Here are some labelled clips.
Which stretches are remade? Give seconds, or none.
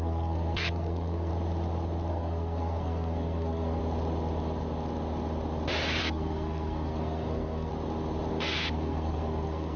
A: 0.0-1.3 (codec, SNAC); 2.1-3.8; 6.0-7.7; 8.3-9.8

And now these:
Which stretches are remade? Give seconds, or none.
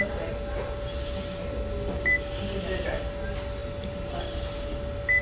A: none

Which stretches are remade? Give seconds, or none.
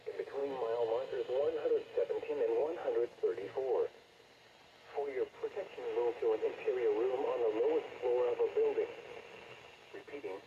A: none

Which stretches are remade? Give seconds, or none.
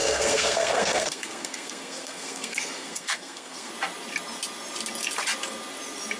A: 0.0-3.7 (codec, SNAC)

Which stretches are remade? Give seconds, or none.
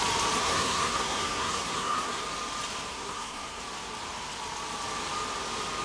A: 0.4-2.2 (codec, SNAC); 2.9-3.6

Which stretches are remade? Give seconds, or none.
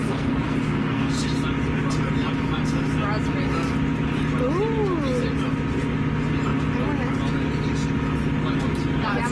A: 0.0-1.1 (codec, SNAC)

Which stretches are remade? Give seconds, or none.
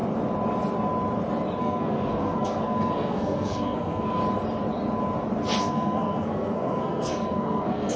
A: 1.6-4.2 (codec, SNAC); 5.6-8.0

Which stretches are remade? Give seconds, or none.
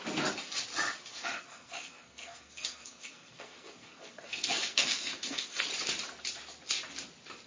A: 1.1-5.6 (codec, SNAC)